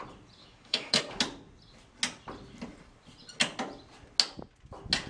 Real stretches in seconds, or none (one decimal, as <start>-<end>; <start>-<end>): 0.0-0.4; 1.0-5.1